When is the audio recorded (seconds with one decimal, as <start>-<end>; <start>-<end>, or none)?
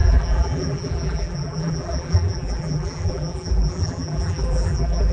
none